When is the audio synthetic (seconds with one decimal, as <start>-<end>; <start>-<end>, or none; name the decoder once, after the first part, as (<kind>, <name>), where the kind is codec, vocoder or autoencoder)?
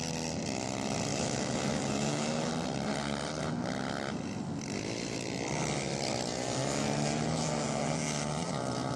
1.1-2.5 (autoencoder, DAC-VAE)